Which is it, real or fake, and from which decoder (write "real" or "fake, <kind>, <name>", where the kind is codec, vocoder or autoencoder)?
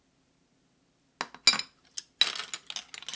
real